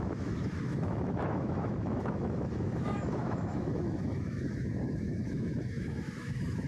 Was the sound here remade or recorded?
remade